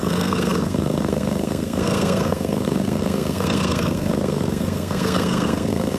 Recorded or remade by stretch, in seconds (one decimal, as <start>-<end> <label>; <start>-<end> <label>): 0.0-6.0 remade